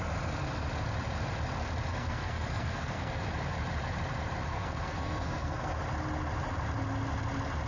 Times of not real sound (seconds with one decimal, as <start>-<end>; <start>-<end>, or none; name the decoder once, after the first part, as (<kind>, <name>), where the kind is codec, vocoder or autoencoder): 1.9-3.3 (codec, SNAC); 4.5-5.8

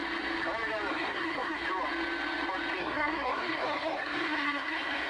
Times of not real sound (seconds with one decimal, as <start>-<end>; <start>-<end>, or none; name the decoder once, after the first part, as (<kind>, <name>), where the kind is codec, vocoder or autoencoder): 0.9-1.6 (codec, SNAC); 2.8-5.1